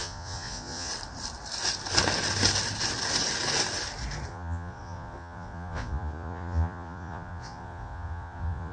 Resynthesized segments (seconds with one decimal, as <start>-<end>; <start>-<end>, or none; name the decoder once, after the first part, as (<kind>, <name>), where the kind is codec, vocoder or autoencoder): 0.0-0.9 (vocoder, Vocos); 4.3-8.7